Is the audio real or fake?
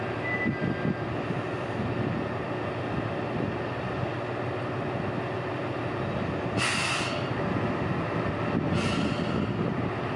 real